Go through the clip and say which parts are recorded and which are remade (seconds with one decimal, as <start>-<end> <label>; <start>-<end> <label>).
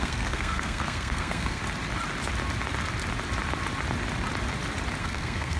0.0-1.6 remade; 1.6-5.0 recorded; 5.0-5.6 remade